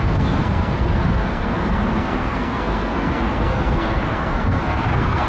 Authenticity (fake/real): fake